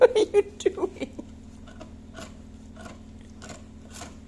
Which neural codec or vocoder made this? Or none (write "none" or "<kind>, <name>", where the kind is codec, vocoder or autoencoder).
none